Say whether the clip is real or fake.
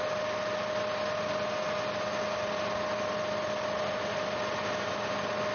real